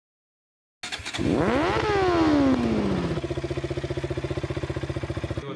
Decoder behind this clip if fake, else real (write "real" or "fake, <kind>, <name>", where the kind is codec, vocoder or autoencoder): real